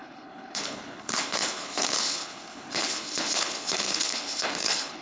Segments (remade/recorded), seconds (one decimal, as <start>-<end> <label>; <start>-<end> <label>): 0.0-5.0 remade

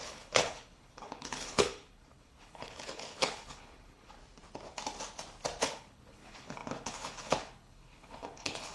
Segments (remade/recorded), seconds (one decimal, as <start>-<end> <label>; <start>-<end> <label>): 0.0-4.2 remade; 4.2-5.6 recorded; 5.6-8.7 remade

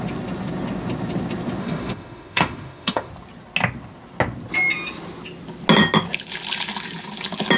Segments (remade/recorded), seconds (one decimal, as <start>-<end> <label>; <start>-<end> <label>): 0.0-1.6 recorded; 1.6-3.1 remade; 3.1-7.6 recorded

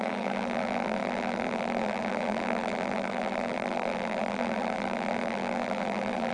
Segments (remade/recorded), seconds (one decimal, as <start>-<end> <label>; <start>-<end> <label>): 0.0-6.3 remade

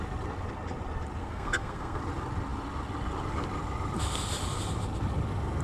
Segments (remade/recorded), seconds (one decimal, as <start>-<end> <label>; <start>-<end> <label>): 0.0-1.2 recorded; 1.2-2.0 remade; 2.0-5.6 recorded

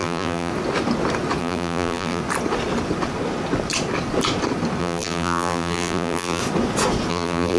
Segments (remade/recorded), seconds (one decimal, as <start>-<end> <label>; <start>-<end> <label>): 0.0-0.5 remade; 0.5-1.4 recorded; 1.4-2.2 remade; 2.2-4.8 recorded; 4.8-6.4 remade; 6.4-7.1 recorded; 7.1-7.6 remade

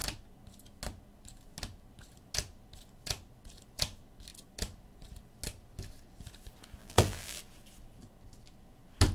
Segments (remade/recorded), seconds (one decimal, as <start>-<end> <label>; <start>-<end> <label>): 0.0-6.8 recorded; 6.8-7.4 remade; 7.4-9.1 recorded

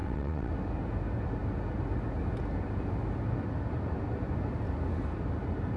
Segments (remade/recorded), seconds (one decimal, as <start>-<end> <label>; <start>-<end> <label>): 0.0-0.5 remade; 0.5-5.8 recorded